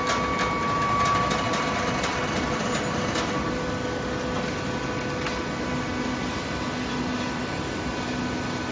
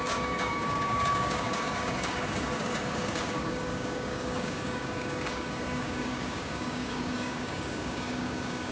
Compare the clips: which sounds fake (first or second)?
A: second